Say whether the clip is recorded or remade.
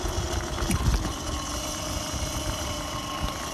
recorded